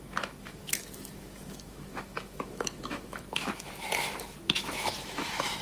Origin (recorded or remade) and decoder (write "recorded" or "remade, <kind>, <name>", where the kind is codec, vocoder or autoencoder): remade, autoencoder, DAC-VAE